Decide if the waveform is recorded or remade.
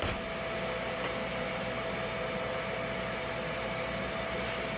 recorded